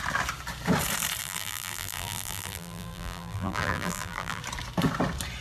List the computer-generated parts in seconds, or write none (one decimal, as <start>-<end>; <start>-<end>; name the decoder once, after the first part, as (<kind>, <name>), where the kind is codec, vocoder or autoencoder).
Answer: 1.2-4.4 (vocoder, BigVGAN v2)